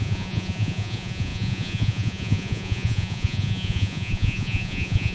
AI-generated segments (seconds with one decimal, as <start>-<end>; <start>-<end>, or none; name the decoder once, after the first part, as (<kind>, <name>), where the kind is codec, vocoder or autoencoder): 0.0-5.1 (vocoder, Vocos)